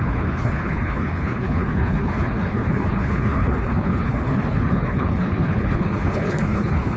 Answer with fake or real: fake